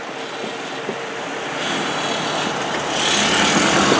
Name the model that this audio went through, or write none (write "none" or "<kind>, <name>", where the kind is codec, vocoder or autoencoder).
none